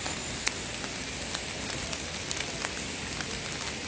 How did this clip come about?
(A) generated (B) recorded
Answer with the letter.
B